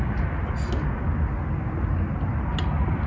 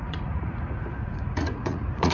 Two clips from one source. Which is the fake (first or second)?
second